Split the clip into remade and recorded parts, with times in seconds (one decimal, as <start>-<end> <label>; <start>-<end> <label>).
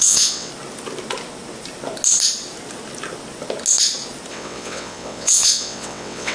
0.0-0.5 remade; 0.5-4.3 recorded; 4.3-6.3 remade